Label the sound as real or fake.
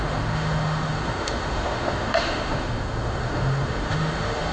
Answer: fake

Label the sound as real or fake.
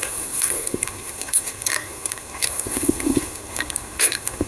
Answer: fake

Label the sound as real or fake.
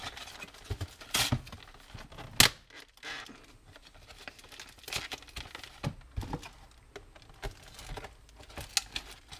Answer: real